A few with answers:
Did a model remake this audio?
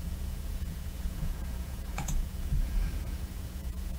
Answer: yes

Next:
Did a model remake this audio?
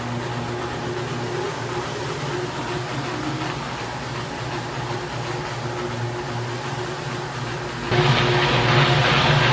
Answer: no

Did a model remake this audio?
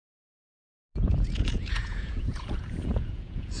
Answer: yes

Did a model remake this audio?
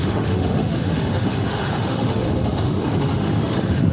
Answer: yes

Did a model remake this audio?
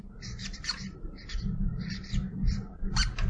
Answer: no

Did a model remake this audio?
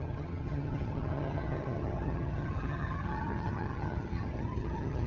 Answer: yes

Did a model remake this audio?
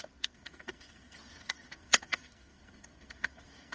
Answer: yes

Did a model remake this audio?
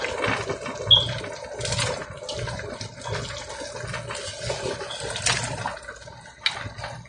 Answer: no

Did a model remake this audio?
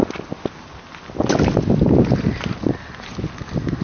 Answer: no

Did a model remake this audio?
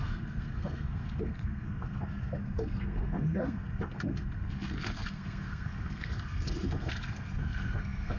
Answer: yes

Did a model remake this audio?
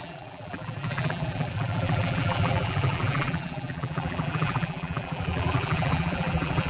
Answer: yes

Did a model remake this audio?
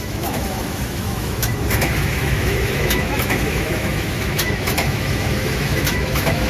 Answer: yes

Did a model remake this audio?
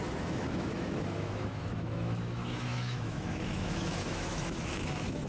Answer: yes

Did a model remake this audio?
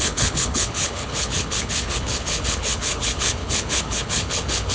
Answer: yes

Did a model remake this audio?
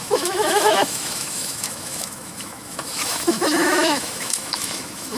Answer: yes